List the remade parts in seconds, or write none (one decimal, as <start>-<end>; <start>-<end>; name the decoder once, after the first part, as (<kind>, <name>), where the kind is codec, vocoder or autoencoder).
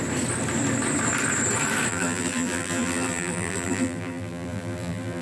1.9-5.2 (vocoder, BigVGAN v2)